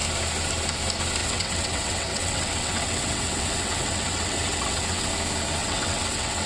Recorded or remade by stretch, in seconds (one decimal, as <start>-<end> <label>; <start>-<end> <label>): 0.0-1.2 recorded; 1.2-5.1 remade; 5.1-5.6 recorded; 5.6-6.5 remade